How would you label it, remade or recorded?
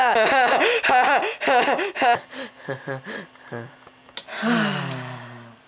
recorded